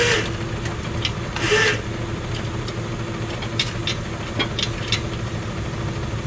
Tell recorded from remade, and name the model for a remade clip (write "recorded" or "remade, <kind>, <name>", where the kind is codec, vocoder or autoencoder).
recorded